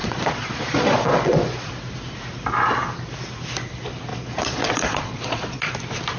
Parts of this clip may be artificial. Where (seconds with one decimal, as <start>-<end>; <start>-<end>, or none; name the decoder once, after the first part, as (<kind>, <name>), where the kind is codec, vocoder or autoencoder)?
0.0-1.7 (vocoder, Vocos); 4.1-5.7